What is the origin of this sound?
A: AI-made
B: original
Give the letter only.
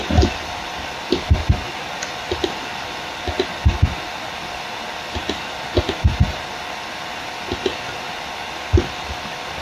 B